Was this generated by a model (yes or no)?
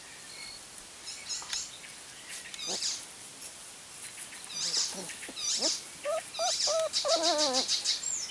no